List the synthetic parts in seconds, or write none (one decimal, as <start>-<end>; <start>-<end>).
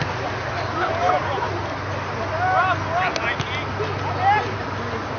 none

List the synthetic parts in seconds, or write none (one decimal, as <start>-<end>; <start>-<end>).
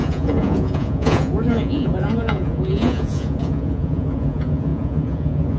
0.0-5.6